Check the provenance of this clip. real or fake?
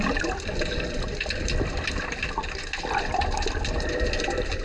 real